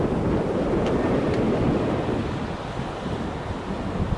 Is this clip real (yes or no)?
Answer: yes